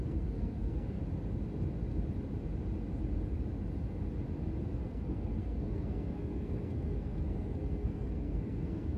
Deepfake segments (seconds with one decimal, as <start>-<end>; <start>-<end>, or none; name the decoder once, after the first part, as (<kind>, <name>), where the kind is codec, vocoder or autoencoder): 0.0-1.0 (codec, SNAC); 4.6-9.0